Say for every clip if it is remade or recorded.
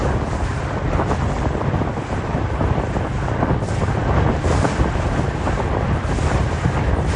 recorded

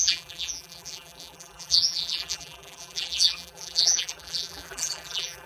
remade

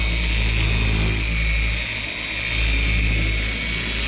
recorded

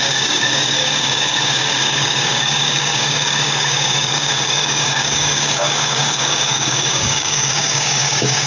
remade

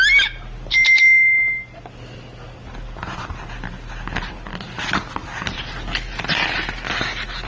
recorded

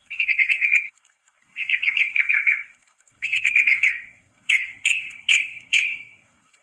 remade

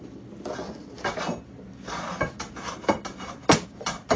recorded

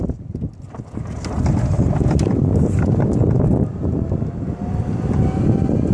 recorded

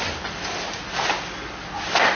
recorded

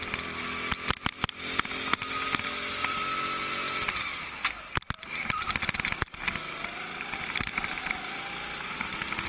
recorded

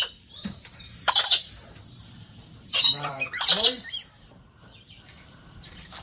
remade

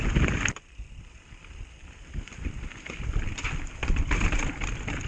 remade